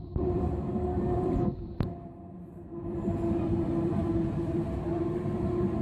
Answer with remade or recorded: remade